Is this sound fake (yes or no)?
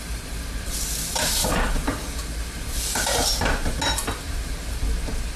no